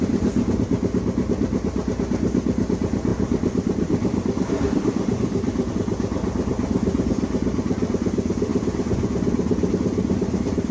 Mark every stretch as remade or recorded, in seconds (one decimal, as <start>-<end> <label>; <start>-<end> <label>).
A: 0.0-3.1 recorded; 3.1-5.7 remade; 5.7-10.7 recorded